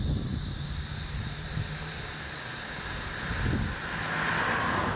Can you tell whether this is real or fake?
real